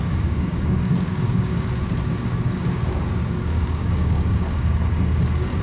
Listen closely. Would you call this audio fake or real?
fake